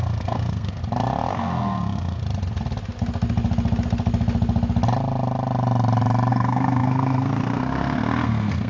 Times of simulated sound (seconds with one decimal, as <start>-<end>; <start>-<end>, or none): 0.0-0.8; 1.3-2.2; 6.3-8.7